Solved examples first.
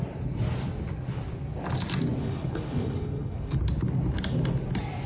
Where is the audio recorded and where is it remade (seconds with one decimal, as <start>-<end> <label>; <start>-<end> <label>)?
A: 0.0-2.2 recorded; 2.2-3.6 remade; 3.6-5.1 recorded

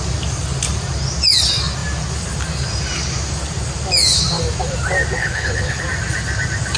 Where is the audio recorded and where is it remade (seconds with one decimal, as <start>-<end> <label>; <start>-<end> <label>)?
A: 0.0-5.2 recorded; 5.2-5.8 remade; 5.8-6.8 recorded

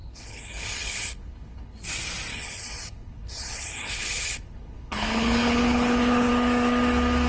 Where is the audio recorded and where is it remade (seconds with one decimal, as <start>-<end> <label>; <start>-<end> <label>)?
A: 0.0-1.8 remade; 1.8-2.3 recorded; 2.3-6.3 remade; 6.3-7.3 recorded